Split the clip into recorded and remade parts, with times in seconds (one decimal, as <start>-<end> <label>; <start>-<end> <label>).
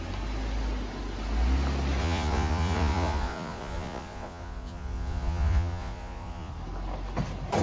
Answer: 0.0-2.0 recorded; 2.0-6.5 remade; 6.5-7.6 recorded